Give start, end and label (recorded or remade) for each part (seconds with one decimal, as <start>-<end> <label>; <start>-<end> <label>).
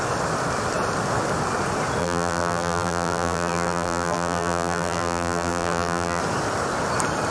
0.0-2.0 recorded; 2.0-6.2 remade; 6.2-7.3 recorded